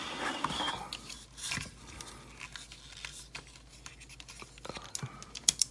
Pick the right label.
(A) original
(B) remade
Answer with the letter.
A